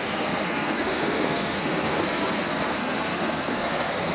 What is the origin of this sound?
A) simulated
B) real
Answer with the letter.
A